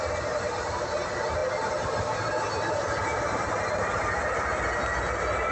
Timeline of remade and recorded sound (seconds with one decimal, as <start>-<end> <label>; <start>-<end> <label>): 0.0-5.5 recorded